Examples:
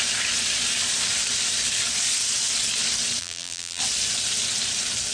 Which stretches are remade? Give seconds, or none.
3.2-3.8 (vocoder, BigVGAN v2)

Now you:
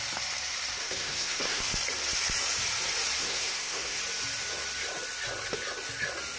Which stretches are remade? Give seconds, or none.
0.8-1.6 (codec, SNAC); 3.2-4.0

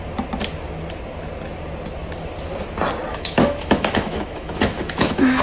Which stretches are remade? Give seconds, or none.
3.1-5.4 (autoencoder, DAC-VAE)